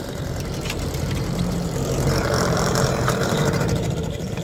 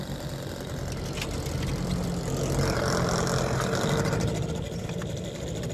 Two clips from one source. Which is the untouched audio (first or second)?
second